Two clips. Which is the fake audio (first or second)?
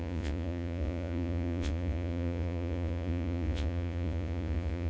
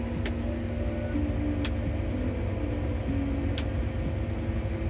first